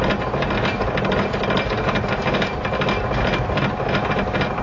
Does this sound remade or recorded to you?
recorded